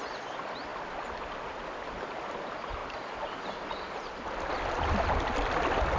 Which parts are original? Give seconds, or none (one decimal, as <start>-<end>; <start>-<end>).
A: 0.0-6.0